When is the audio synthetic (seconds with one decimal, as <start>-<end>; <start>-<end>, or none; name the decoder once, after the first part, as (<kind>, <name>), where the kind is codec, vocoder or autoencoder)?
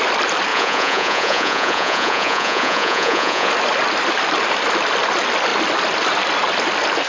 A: 0.5-3.5 (vocoder, Vocos)